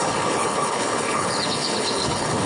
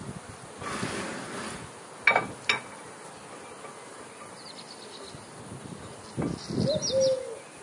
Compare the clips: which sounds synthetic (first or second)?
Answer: first